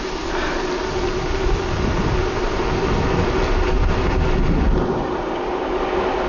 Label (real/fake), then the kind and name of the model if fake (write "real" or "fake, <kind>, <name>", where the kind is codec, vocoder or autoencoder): real